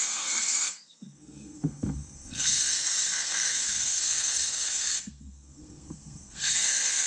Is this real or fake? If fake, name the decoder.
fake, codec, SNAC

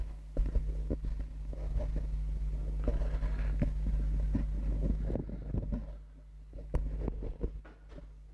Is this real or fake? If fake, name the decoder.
real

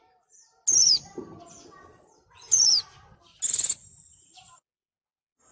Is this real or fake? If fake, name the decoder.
real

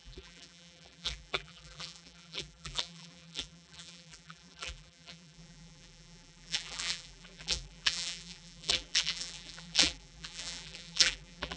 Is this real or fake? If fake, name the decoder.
fake, vocoder, BigVGAN v2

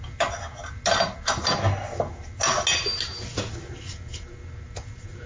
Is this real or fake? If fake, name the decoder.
real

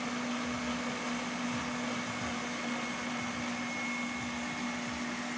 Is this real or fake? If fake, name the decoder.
real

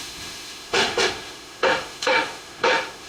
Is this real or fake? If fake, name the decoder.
fake, autoencoder, DAC-VAE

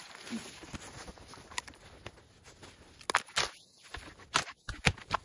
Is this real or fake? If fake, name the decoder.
real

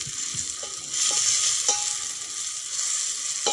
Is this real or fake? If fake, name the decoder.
real